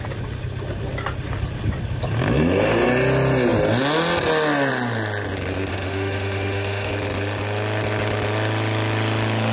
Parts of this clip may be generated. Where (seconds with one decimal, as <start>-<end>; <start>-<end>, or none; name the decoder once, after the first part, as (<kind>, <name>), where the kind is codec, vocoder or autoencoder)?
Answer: 5.7-6.9 (autoencoder, DAC-VAE)